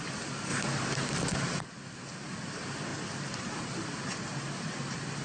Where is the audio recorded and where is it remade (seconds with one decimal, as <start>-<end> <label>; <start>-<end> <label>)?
0.0-2.9 recorded; 2.9-3.5 remade; 3.5-5.2 recorded